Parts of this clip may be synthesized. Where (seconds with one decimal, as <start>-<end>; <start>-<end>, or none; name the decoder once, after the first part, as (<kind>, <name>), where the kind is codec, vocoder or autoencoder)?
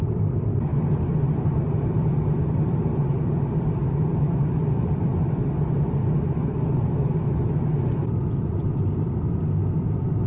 0.0-10.3 (vocoder, BigVGAN v2)